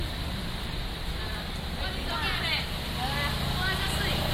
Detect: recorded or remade recorded